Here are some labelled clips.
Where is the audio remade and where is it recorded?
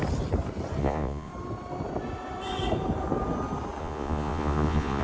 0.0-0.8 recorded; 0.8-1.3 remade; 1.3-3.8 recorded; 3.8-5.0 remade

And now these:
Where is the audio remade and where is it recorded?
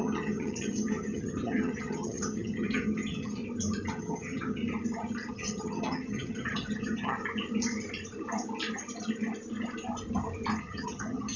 0.0-3.4 remade; 3.4-3.9 recorded; 3.9-4.6 remade; 4.6-5.3 recorded; 5.3-7.2 remade; 7.2-10.6 recorded; 10.6-11.4 remade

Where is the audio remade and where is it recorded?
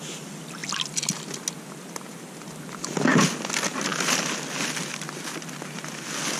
0.0-6.4 recorded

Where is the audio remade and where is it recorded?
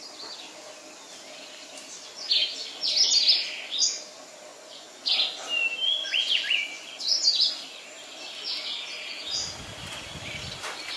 0.0-4.5 recorded; 4.5-5.0 remade; 5.0-6.0 recorded; 6.0-7.5 remade; 7.5-11.0 recorded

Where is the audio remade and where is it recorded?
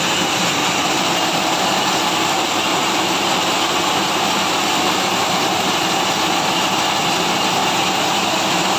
0.0-0.6 recorded; 0.6-1.3 remade; 1.3-2.7 recorded; 2.7-5.4 remade; 5.4-8.8 recorded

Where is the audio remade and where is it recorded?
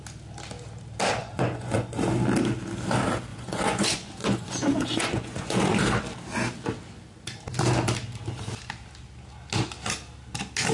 0.0-1.2 recorded; 1.2-2.0 remade; 2.0-3.3 recorded; 3.3-5.8 remade; 5.8-10.7 recorded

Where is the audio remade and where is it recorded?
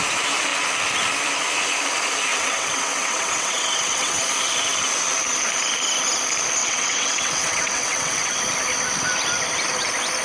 0.0-2.3 recorded; 2.3-4.2 remade; 4.2-6.6 recorded; 6.6-8.4 remade; 8.4-10.2 recorded